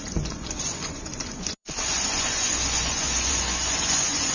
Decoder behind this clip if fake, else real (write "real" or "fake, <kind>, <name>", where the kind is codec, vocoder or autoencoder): fake, vocoder, Vocos